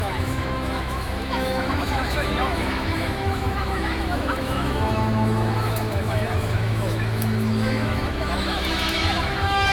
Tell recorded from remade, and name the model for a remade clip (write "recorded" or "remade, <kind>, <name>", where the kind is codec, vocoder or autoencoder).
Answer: remade, autoencoder, DAC-VAE